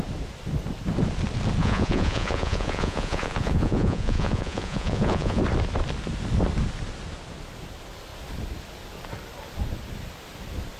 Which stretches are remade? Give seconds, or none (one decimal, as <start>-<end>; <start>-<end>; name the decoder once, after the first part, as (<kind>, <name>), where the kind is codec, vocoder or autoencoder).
1.6-5.4 (vocoder, Vocos)